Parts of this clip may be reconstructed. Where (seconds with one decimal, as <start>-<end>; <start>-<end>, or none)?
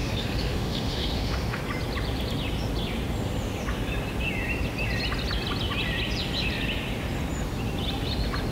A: 0.0-1.6